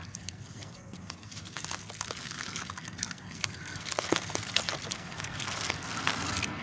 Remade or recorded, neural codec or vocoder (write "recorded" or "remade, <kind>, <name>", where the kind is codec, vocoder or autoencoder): remade, codec, SNAC